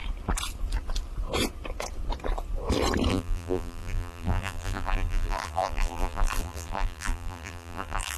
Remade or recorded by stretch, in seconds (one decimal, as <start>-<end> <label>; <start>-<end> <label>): 0.0-3.1 recorded; 3.1-8.2 remade